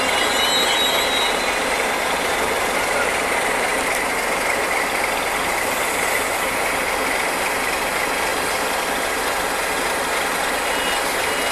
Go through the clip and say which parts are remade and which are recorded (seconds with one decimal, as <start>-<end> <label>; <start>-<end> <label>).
0.0-11.5 recorded